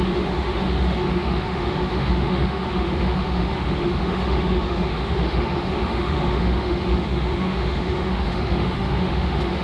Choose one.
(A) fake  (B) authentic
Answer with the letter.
A